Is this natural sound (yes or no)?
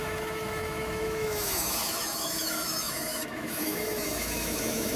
no